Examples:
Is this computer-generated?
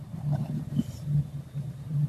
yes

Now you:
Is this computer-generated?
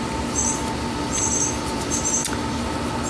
no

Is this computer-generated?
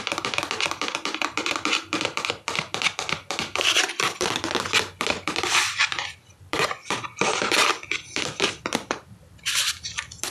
yes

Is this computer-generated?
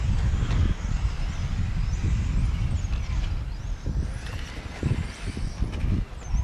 no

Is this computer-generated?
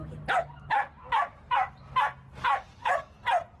no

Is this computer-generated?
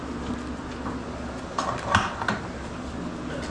no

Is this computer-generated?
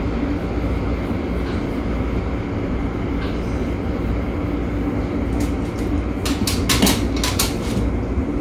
no